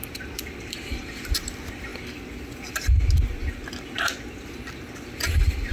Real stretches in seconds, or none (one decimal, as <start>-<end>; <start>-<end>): 1.9-5.3